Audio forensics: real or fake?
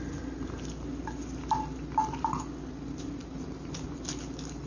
real